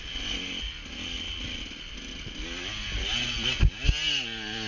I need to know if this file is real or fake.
real